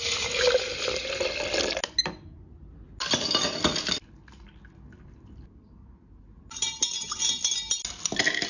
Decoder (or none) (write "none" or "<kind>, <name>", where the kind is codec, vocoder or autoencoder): none